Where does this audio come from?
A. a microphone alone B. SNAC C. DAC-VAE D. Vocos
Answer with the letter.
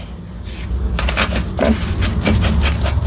A